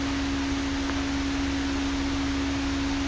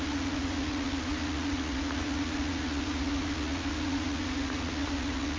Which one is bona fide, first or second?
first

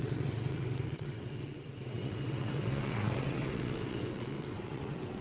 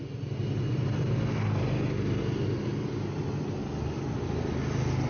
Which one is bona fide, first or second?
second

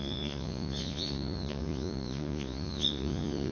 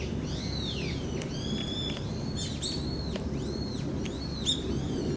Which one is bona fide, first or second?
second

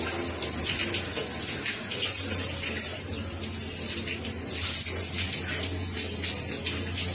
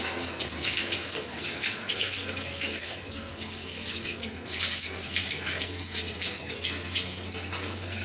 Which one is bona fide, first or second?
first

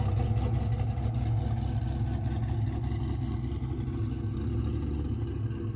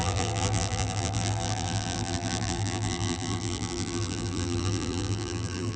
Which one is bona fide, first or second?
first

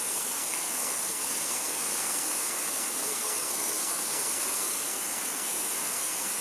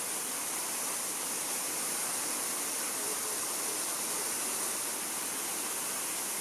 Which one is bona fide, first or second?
second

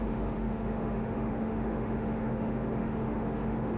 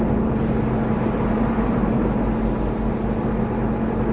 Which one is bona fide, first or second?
second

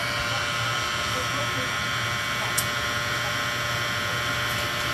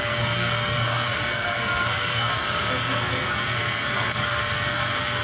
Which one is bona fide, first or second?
first